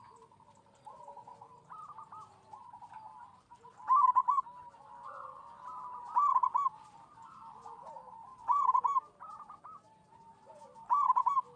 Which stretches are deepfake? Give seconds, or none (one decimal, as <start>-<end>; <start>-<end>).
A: none